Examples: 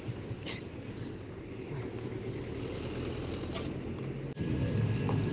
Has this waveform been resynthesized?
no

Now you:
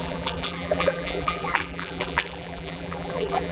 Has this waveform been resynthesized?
yes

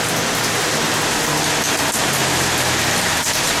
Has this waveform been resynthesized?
no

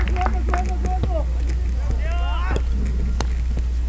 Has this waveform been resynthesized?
no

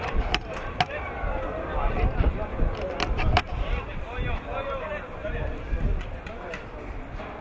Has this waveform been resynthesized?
no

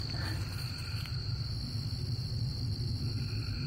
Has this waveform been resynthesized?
no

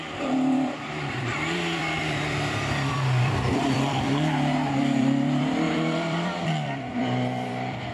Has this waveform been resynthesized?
yes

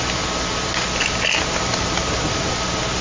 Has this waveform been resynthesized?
no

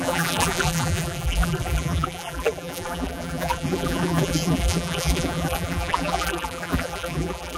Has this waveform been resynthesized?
yes